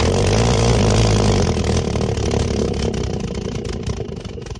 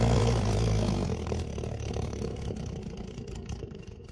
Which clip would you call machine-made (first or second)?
second